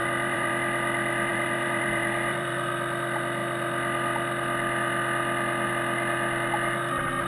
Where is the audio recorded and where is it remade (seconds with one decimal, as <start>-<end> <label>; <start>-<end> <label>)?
0.0-0.5 remade; 0.5-1.3 recorded; 1.3-2.7 remade; 2.7-7.3 recorded